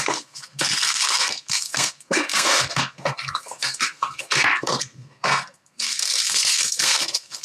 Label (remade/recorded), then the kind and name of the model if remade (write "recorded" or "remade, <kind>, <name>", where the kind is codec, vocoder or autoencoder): remade, codec, SNAC